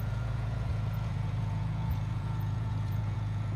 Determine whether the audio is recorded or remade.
remade